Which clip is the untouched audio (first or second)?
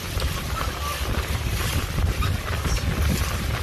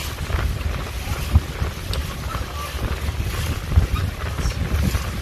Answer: second